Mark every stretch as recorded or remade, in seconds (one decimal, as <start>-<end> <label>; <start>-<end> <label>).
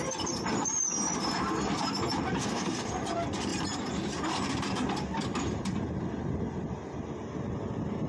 0.0-2.4 recorded; 2.4-2.9 remade; 2.9-8.1 recorded